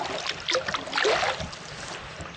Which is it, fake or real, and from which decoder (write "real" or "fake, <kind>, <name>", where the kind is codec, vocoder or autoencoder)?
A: real